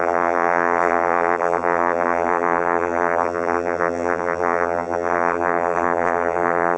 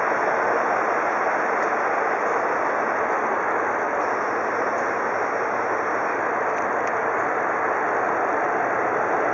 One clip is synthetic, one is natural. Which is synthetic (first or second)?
first